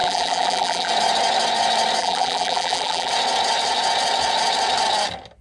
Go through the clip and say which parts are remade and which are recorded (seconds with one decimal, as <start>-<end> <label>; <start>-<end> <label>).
0.0-0.9 remade; 0.9-2.0 recorded; 2.0-3.1 remade; 3.1-5.4 recorded